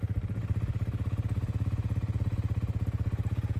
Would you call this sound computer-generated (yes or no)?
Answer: no